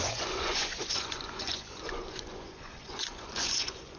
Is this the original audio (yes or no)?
no